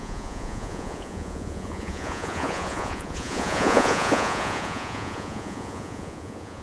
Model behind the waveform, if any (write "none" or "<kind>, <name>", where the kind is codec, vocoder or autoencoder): vocoder, Vocos